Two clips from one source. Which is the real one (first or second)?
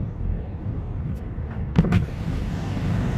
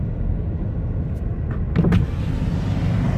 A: second